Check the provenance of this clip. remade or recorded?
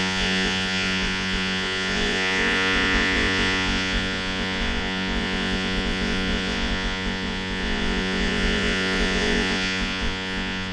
remade